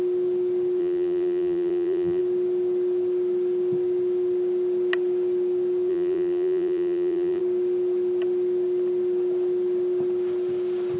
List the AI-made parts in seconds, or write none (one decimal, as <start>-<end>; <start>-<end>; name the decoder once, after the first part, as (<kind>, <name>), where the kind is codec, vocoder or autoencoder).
0.8-2.2 (vocoder, BigVGAN v2); 5.9-7.4